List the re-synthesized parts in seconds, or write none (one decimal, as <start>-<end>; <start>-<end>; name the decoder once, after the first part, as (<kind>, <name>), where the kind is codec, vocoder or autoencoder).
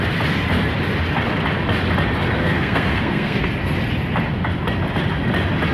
2.4-3.5 (codec, SNAC)